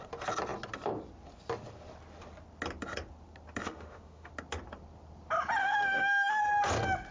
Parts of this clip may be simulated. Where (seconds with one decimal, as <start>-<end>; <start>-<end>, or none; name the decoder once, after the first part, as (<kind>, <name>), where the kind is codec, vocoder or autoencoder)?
3.6-4.3 (autoencoder, DAC-VAE); 5.6-6.4